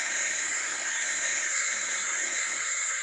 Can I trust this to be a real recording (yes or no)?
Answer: no